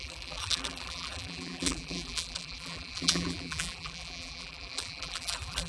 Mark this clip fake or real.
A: fake